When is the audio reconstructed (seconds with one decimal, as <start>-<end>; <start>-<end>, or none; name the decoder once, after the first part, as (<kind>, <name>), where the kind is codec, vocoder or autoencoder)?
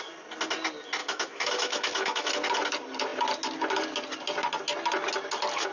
1.0-2.3 (autoencoder, DAC-VAE)